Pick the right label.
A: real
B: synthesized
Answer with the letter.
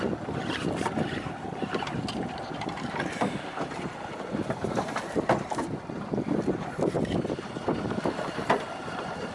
A